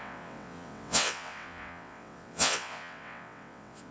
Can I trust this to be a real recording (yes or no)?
no